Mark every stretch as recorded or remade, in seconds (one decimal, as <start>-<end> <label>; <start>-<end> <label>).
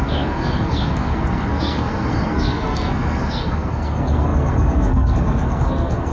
0.0-6.1 remade